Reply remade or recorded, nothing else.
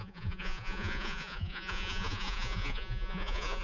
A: remade